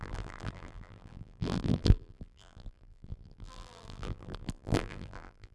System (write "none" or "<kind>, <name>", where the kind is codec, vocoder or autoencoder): vocoder, BigVGAN v2